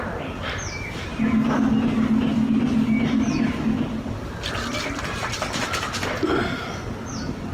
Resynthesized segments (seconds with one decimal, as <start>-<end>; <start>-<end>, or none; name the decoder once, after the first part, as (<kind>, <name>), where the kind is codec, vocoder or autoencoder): none